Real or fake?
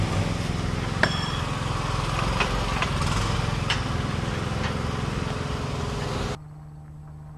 real